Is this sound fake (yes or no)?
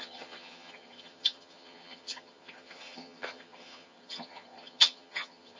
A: yes